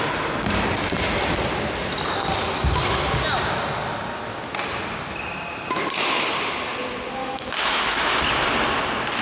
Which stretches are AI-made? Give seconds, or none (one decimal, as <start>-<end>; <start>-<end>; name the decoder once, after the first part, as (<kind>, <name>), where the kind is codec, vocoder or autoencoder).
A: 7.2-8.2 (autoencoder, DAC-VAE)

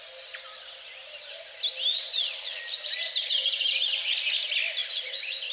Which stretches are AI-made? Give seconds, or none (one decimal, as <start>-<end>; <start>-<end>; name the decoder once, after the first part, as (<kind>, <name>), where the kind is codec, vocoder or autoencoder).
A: 1.9-2.6 (vocoder, Vocos); 4.8-5.5

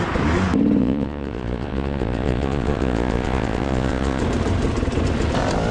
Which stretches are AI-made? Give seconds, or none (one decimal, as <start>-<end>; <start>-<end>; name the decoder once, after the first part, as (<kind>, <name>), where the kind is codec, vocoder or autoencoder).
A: 0.8-4.2 (vocoder, Vocos)

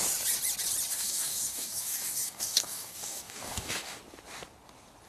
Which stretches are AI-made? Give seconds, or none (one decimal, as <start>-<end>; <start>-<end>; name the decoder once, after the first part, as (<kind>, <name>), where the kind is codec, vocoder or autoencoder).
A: 0.9-4.0 (codec, DAC)

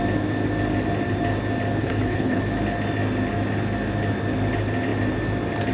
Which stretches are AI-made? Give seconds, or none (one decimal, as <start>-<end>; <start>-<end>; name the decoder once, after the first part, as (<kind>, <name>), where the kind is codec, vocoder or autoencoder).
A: 1.8-2.4 (codec, HILCodec)